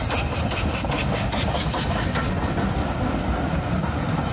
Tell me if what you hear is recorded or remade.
recorded